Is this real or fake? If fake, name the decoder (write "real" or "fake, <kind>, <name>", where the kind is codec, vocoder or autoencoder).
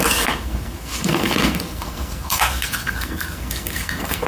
fake, codec, SNAC